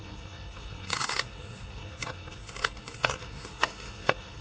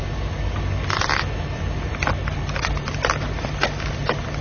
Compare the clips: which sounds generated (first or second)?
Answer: first